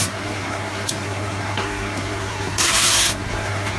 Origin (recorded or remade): remade